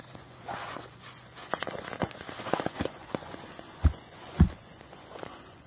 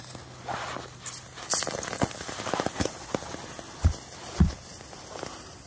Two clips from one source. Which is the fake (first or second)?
first